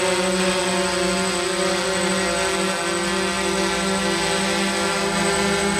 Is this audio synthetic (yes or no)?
no